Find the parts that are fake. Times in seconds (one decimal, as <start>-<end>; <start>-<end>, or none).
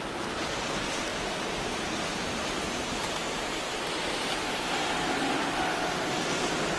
none